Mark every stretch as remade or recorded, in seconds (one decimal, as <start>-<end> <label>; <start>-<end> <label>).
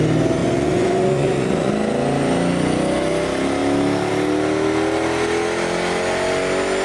0.0-0.4 recorded; 0.4-1.7 remade; 1.7-6.8 recorded